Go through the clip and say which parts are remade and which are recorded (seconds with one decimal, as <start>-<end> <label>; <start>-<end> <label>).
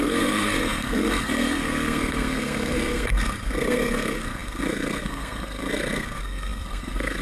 0.0-7.2 remade